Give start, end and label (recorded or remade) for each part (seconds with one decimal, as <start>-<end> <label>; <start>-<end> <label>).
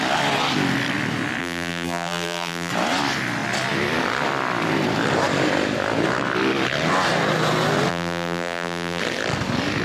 0.0-1.4 recorded; 1.4-2.7 remade; 2.7-7.9 recorded; 7.9-9.0 remade; 9.0-9.8 recorded